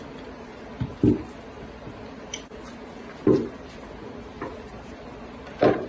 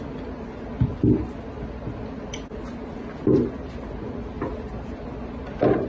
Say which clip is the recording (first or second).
second